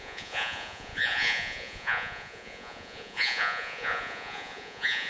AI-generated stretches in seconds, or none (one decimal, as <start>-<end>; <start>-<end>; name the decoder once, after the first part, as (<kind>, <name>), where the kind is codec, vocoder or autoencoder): 0.0-5.1 (vocoder, Vocos)